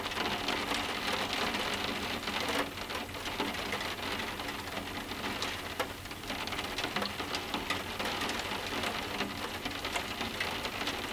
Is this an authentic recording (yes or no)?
yes